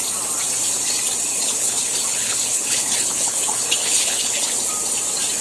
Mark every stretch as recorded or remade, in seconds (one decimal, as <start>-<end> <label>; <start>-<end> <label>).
0.0-1.3 recorded; 1.3-4.5 remade; 4.5-5.4 recorded